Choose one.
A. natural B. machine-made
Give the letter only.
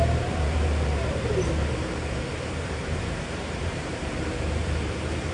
B